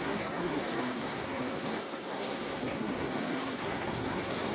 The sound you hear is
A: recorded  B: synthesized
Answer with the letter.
B